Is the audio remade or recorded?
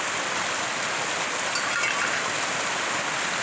recorded